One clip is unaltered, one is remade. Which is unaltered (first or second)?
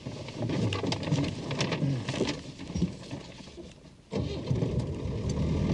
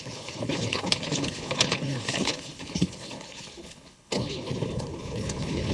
first